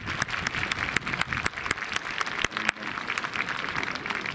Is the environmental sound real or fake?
real